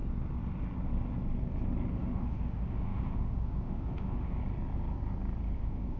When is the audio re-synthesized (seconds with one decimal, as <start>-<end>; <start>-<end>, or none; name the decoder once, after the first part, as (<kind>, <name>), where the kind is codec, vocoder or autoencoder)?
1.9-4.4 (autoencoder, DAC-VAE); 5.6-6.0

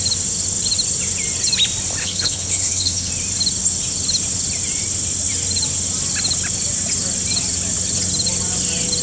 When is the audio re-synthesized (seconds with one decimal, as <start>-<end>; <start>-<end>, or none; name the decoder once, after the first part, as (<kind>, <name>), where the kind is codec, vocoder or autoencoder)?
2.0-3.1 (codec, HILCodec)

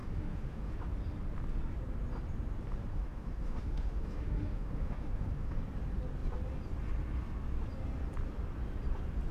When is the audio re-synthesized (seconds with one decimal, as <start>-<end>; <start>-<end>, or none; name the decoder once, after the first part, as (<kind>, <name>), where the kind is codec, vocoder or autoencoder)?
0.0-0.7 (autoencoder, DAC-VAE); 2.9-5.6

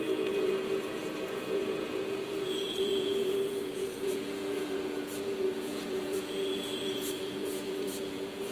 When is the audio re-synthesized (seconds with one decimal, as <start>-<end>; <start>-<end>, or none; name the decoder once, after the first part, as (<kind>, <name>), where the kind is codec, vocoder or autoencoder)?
0.0-8.5 (vocoder, Vocos)